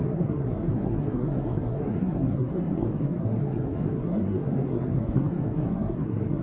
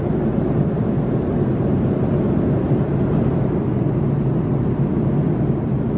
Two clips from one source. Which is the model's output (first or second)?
first